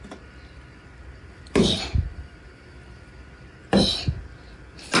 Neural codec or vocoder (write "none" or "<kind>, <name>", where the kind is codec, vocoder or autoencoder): vocoder, BigVGAN v2